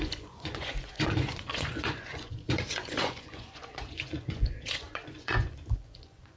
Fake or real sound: fake